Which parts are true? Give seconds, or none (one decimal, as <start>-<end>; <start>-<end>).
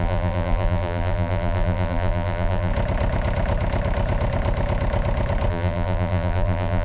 2.7-5.5